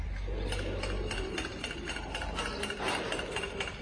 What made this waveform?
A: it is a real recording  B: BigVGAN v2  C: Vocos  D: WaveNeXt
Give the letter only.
A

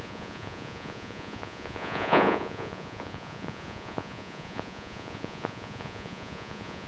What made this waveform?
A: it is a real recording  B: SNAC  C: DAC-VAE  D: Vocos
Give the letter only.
D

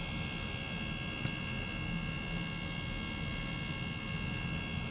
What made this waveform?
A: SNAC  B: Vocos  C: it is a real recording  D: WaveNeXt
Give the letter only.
C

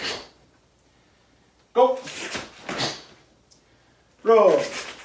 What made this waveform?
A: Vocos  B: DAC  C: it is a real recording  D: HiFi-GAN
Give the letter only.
C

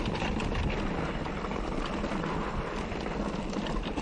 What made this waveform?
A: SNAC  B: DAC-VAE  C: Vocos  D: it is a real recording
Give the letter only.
D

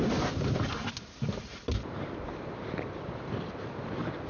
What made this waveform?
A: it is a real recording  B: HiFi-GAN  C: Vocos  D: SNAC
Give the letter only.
A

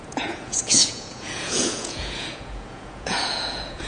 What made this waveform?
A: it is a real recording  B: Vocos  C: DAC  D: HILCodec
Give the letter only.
B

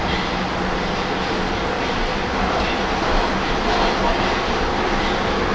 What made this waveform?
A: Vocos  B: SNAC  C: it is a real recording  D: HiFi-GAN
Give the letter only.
C